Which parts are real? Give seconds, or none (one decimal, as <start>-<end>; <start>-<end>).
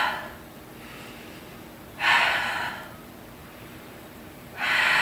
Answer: 0.0-3.4